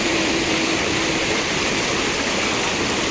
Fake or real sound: fake